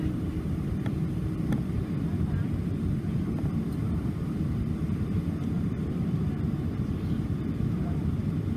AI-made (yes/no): yes